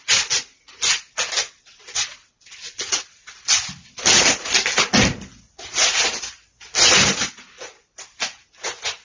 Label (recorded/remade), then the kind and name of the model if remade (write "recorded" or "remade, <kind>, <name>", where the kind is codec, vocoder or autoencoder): recorded